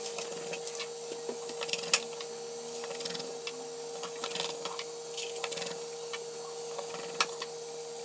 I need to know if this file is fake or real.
real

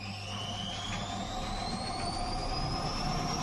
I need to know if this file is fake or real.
real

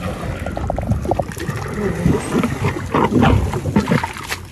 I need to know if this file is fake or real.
real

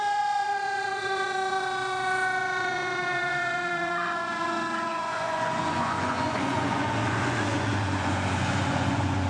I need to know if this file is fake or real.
fake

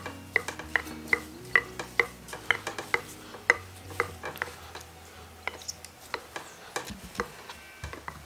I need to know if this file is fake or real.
real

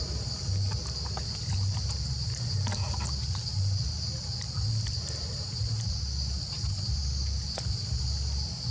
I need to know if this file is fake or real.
real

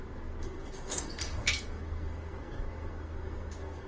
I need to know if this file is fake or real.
fake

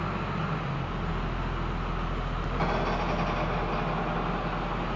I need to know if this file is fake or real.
real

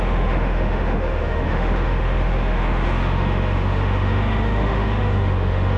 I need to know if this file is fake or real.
fake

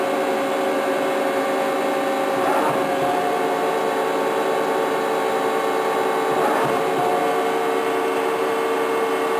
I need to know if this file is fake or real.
real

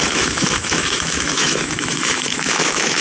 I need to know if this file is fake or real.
fake